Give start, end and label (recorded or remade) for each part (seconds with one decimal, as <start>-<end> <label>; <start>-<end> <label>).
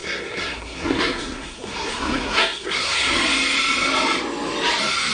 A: 0.0-3.1 remade; 3.1-5.1 recorded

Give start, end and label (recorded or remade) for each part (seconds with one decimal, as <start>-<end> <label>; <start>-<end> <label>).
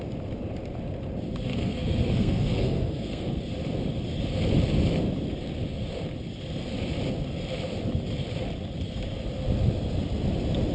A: 0.0-1.5 recorded; 1.5-3.4 remade; 3.4-10.7 recorded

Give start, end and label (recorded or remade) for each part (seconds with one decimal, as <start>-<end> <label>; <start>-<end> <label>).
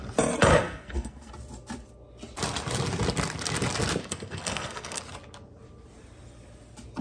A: 0.0-0.5 recorded; 0.5-1.3 remade; 1.3-4.0 recorded; 4.0-5.0 remade; 5.0-7.0 recorded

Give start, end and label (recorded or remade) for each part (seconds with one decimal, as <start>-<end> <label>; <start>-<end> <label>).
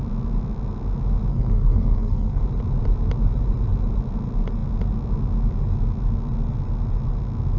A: 0.0-1.3 recorded; 1.3-2.4 remade; 2.4-7.6 recorded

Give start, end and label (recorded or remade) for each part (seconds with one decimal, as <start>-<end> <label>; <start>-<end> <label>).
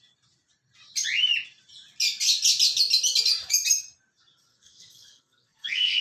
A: 0.0-4.5 recorded; 4.5-6.0 remade